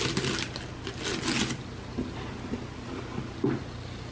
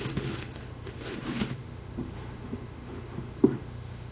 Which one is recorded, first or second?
first